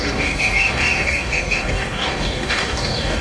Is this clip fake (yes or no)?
yes